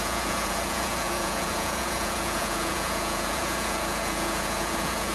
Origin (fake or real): fake